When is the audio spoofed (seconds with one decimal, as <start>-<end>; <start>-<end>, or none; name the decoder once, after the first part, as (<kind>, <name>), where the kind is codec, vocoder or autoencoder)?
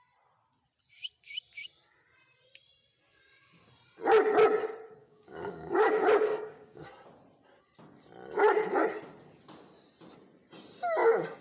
5.0-6.9 (codec, DAC)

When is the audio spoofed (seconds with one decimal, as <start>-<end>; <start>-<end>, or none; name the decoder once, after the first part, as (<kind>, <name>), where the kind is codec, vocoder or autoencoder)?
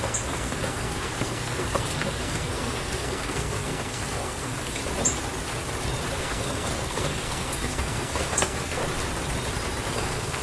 0.0-4.8 (codec, SNAC); 6.2-8.8; 9.9-10.4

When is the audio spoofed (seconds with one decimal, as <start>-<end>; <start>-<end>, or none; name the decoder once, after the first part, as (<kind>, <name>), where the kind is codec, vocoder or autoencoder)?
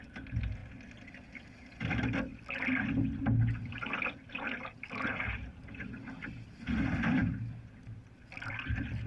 0.0-2.3 (vocoder, BigVGAN v2); 3.6-9.1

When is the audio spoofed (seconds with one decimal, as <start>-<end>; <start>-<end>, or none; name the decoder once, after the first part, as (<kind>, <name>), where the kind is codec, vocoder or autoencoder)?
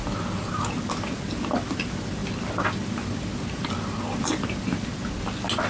none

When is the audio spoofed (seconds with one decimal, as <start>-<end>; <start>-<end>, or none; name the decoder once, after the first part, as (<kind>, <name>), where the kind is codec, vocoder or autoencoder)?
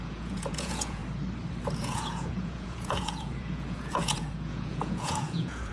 0.0-1.0 (vocoder, Vocos); 1.6-5.7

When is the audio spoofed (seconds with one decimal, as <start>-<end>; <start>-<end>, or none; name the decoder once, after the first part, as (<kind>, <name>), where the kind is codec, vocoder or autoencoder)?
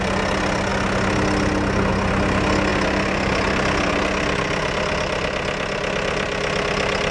none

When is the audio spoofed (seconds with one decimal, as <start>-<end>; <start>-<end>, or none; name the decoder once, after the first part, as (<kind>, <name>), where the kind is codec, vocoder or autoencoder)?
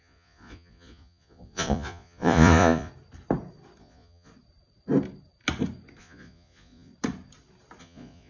0.0-2.9 (vocoder, Vocos); 3.8-4.3; 6.0-6.9; 7.8-8.3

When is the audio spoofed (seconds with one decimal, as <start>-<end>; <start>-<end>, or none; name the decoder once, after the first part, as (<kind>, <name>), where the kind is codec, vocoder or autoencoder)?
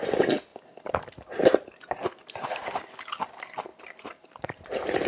3.7-5.1 (vocoder, BigVGAN v2)